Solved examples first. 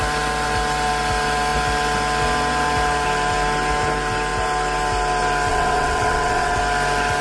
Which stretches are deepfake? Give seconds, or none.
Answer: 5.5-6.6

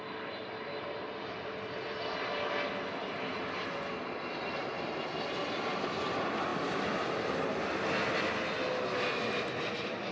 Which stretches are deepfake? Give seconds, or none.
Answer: none